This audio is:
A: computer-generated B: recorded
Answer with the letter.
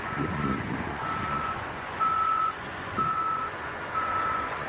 A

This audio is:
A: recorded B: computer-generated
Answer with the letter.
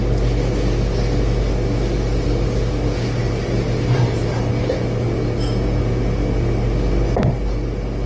A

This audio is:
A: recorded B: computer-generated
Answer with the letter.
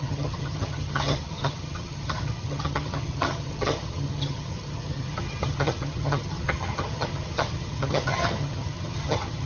B